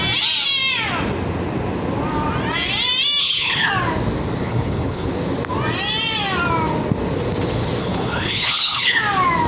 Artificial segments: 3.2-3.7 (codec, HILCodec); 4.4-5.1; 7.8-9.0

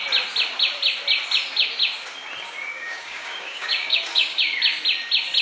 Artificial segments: 2.7-4.4 (codec, DAC)

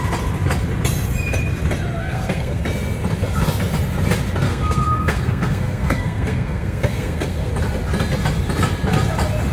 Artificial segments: 2.0-2.6 (codec, SNAC); 4.5-7.5

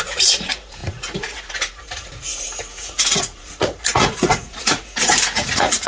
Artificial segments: 0.0-5.9 (vocoder, Vocos)

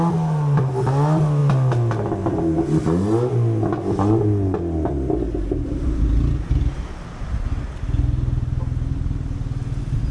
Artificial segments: none

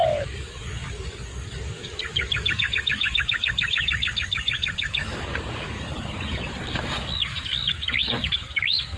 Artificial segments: 0.0-9.0 (codec, DAC)

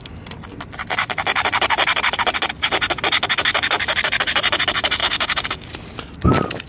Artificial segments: 5.0-5.7 (codec, DAC)

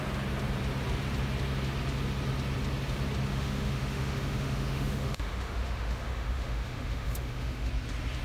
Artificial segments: 3.3-7.7 (autoencoder, DAC-VAE)